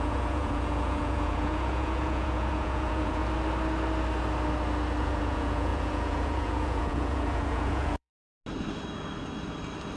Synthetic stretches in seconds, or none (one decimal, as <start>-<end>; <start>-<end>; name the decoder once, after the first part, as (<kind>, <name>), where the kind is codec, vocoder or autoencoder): 0.0-3.2 (vocoder, Vocos); 5.0-8.1